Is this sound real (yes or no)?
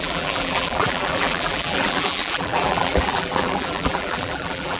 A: no